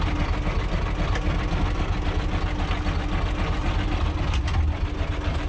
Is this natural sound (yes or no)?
yes